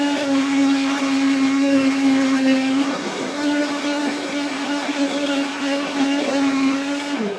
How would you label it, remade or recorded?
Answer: remade